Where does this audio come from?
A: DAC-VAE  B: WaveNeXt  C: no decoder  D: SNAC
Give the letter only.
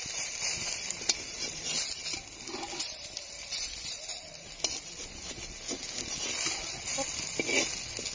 C